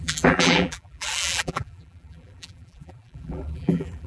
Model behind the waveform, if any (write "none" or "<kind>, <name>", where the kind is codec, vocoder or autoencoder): vocoder, BigVGAN v2